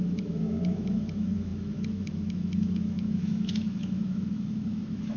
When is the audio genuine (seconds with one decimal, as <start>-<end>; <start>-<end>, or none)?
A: none

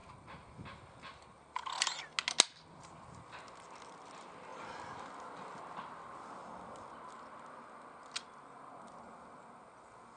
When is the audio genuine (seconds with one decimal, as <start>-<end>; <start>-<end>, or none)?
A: 0.0-10.2

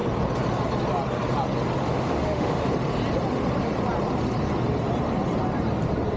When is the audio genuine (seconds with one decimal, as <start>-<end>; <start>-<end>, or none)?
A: 0.0-1.8; 2.7-6.2

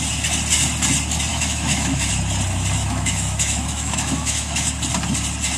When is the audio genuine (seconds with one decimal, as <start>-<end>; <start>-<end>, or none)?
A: 0.0-1.3; 2.1-2.8; 4.7-5.6

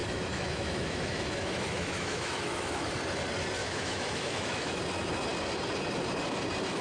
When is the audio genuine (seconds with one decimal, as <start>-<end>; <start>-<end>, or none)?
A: 2.9-3.6; 4.8-6.8

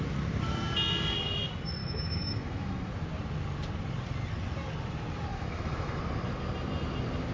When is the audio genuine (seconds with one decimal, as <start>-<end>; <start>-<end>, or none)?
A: 0.0-1.8; 2.9-5.3; 6.0-7.3

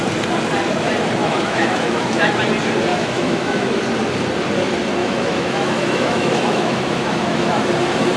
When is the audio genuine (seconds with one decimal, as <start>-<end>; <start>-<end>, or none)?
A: 0.0-1.2; 2.3-2.9; 3.8-5.0; 7.6-8.2